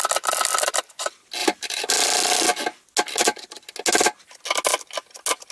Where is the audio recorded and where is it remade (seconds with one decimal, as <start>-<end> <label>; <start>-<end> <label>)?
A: 0.0-1.4 recorded; 1.4-1.9 remade; 1.9-5.5 recorded